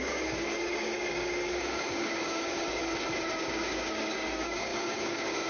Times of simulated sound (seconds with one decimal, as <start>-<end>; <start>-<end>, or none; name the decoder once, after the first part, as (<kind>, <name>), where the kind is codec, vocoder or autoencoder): 0.0-2.8 (codec, DAC); 3.4-5.5